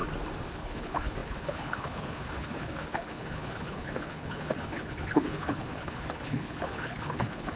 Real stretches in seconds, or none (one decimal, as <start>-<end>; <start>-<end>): 0.0-0.5